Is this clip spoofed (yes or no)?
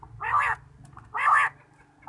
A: no